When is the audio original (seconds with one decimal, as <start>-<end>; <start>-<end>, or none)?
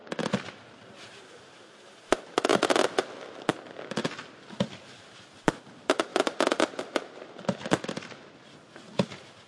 0.0-9.5